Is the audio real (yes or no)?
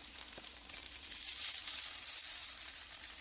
no